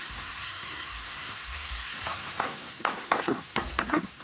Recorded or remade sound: remade